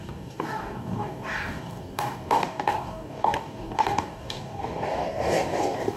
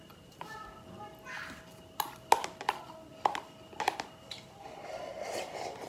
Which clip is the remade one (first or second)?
first